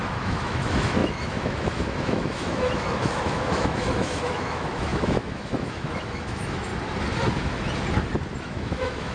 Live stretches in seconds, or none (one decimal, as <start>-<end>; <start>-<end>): 6.7-8.4